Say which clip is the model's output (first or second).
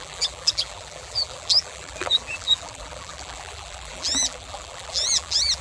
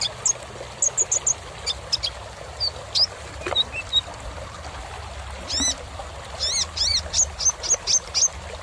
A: first